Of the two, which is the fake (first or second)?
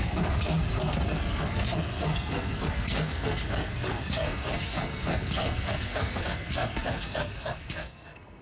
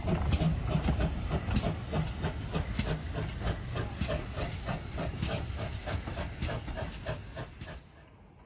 first